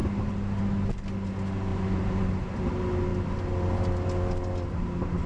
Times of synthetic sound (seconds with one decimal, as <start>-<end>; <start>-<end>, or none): 0.0-0.6; 1.7-2.6